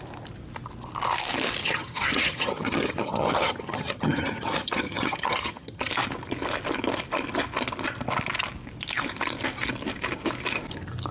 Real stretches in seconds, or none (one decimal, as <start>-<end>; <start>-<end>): 0.0-1.6; 5.9-11.1